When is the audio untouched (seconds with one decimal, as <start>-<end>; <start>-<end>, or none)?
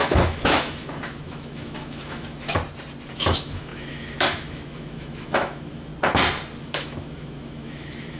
2.6-3.1; 5.9-6.6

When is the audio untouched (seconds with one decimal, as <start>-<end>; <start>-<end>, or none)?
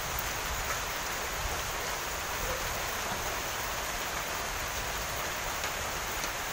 0.0-1.4; 5.3-6.5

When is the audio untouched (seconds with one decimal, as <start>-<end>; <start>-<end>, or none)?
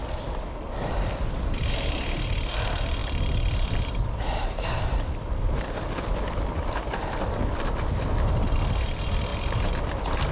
0.7-3.0; 7.2-9.3; 9.8-10.3